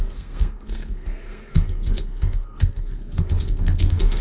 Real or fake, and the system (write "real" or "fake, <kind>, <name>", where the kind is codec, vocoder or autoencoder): fake, codec, SNAC